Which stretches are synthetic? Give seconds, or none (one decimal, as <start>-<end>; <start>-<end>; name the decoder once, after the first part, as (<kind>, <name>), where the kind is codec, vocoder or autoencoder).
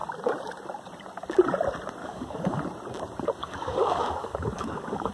2.0-2.6 (codec, DAC); 3.4-5.1